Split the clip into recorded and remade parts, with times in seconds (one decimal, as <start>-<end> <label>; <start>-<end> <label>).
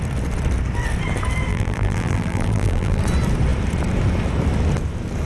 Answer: 0.0-1.5 recorded; 1.5-3.0 remade; 3.0-5.3 recorded